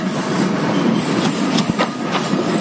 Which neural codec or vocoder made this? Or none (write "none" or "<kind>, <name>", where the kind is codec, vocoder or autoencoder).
none